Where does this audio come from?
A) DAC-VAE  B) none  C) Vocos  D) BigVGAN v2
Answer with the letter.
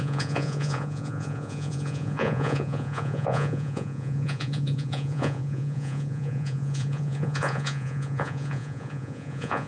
C